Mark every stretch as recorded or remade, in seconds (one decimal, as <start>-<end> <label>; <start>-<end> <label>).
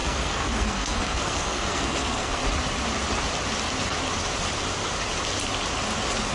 0.0-2.4 remade; 2.4-6.3 recorded